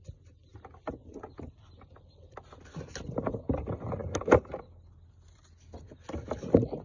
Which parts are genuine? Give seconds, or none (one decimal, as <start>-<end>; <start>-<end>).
0.0-6.8

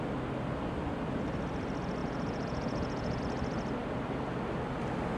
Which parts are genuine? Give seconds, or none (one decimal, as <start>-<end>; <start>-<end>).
0.0-2.0; 3.2-5.2

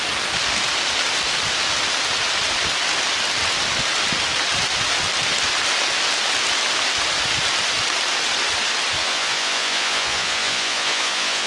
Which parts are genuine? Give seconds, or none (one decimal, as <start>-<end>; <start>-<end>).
0.0-9.0

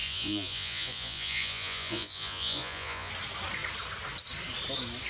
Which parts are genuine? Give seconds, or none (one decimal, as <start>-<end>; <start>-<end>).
3.1-5.1